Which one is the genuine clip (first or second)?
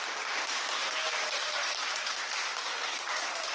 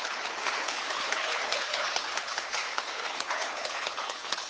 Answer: first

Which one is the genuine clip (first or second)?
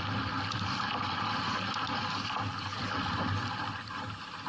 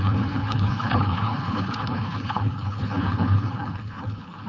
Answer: first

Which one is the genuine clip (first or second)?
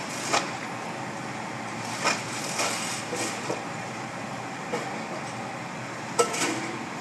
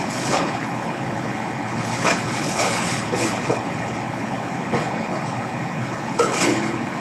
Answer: first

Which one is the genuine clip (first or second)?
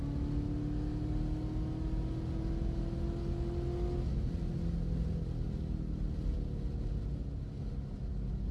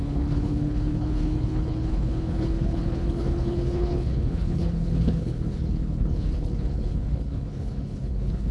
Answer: first